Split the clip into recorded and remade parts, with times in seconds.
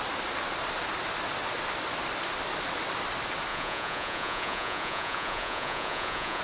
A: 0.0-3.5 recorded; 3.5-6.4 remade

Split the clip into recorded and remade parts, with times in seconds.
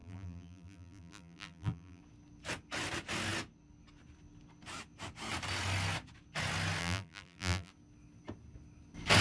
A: 0.0-2.0 remade; 2.0-6.8 recorded; 6.8-7.7 remade; 7.7-9.2 recorded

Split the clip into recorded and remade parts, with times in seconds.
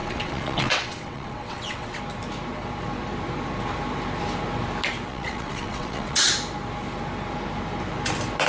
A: 0.0-2.0 remade; 2.0-5.1 recorded; 5.1-6.3 remade; 6.3-8.5 recorded